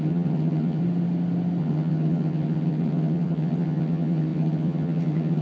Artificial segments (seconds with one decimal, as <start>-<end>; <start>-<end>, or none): 0.0-0.8; 1.6-5.4